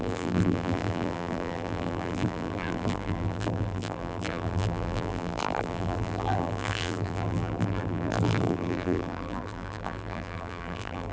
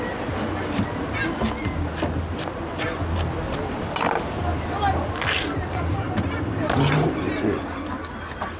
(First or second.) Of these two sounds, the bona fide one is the second